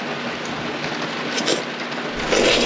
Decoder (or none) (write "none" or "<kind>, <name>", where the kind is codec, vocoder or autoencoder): none